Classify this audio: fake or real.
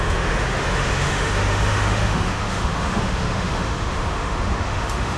fake